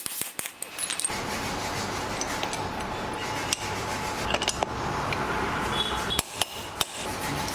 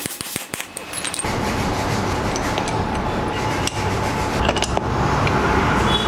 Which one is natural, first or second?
first